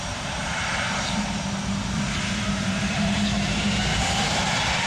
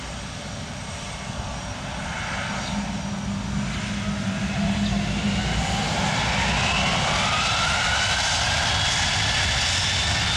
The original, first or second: second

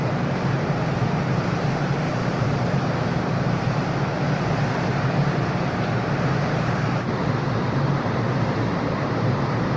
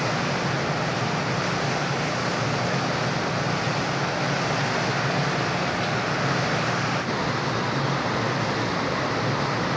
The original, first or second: second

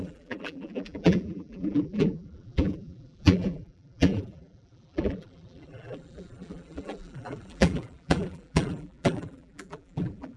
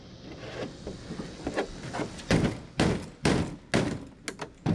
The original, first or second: second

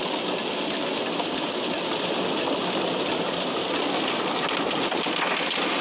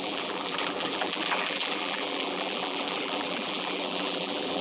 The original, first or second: first